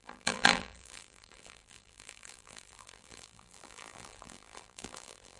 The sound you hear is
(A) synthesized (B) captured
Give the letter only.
A